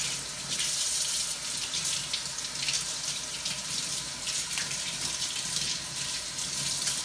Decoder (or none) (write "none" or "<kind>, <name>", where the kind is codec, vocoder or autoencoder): none